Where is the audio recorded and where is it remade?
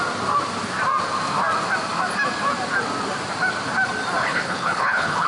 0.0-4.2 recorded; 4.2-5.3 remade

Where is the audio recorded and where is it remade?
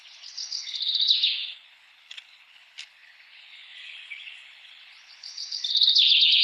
0.0-6.4 remade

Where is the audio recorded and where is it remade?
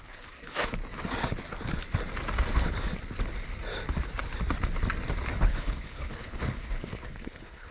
0.0-0.8 remade; 0.8-2.5 recorded; 2.5-2.9 remade; 2.9-5.4 recorded; 5.4-7.7 remade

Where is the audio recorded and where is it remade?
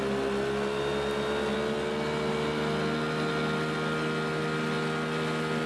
0.0-5.7 recorded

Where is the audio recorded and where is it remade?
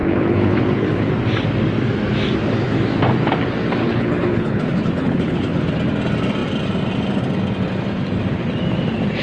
0.0-1.1 remade; 1.1-3.8 recorded; 3.8-5.7 remade; 5.7-9.2 recorded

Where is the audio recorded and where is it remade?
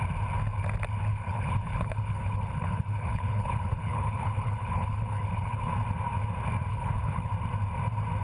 0.0-1.1 recorded; 1.1-5.7 remade; 5.7-6.7 recorded; 6.7-7.3 remade; 7.3-8.2 recorded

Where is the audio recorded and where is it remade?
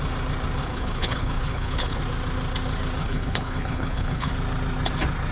0.0-0.6 recorded; 0.6-2.0 remade; 2.0-3.0 recorded; 3.0-4.3 remade; 4.3-5.3 recorded